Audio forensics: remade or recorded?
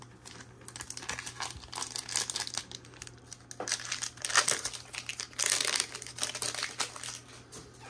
recorded